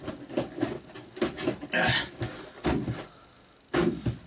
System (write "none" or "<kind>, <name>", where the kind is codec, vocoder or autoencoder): none